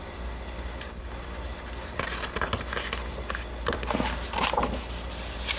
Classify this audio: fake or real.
real